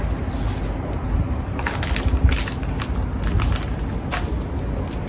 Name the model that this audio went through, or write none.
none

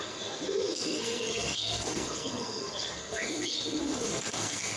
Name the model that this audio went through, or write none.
codec, SNAC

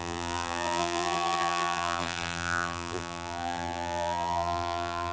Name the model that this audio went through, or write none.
vocoder, BigVGAN v2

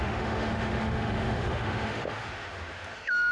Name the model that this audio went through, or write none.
autoencoder, DAC-VAE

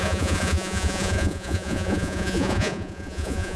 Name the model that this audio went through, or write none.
vocoder, Vocos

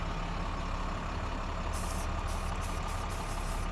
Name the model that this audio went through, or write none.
none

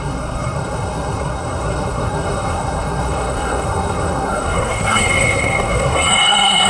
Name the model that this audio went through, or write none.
codec, SNAC